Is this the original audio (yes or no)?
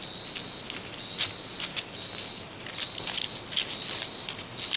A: yes